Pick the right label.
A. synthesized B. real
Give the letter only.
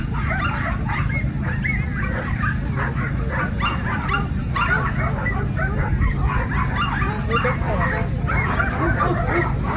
B